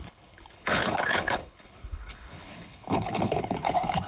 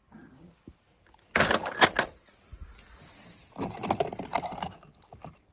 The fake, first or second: first